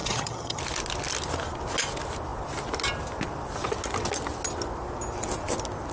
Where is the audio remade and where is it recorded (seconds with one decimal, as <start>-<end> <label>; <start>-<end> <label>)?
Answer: 0.0-0.6 remade; 0.6-5.9 recorded